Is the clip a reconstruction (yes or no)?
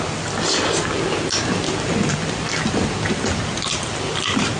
no